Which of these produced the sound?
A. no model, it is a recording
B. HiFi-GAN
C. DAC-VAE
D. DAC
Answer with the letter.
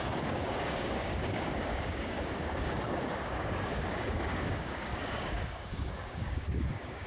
D